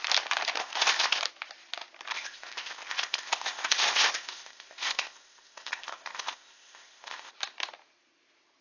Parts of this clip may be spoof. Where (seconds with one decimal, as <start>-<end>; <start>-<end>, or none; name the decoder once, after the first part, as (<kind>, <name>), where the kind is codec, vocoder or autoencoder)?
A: 0.6-1.2 (codec, ZipCodec); 2.1-7.3